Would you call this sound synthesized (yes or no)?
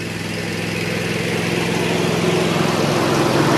no